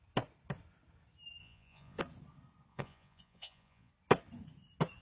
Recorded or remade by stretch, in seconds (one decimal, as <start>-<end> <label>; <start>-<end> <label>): 0.0-1.4 recorded; 1.4-2.0 remade; 2.0-2.7 recorded; 2.7-3.9 remade; 3.9-5.0 recorded